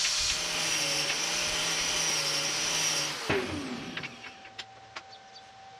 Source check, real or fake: real